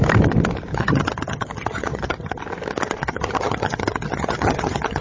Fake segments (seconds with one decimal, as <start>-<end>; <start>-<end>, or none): 0.7-2.4; 3.0-5.0